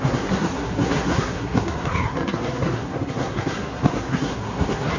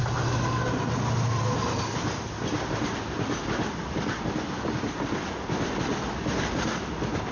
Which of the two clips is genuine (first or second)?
second